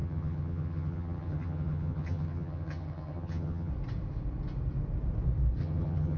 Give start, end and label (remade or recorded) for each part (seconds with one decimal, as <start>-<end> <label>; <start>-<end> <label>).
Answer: 0.0-3.7 remade; 3.7-5.6 recorded; 5.6-6.2 remade